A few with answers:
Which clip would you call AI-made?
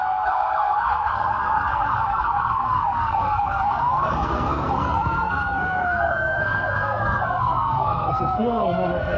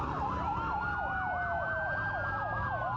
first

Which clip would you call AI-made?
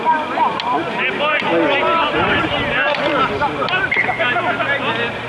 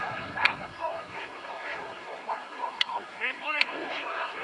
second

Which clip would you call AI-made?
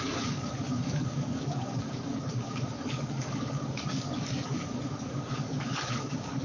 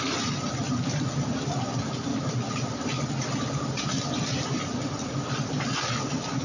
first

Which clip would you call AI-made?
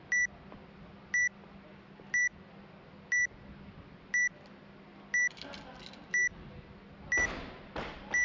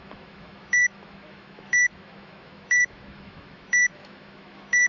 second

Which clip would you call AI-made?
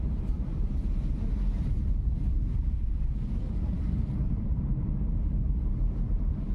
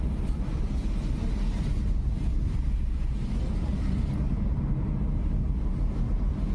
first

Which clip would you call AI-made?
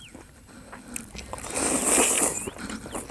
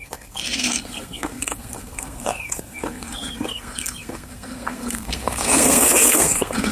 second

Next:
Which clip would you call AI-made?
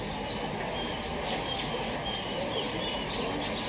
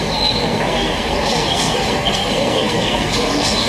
second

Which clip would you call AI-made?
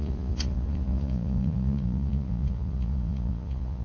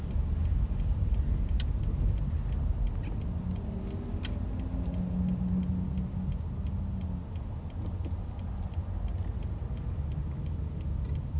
first